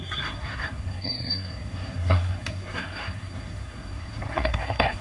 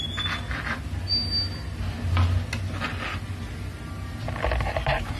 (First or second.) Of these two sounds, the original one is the second